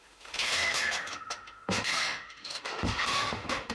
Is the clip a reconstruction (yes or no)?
yes